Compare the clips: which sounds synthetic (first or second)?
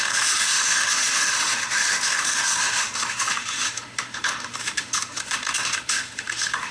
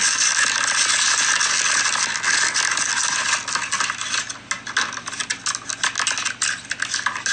first